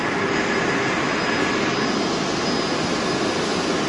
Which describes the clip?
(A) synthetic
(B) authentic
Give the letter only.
B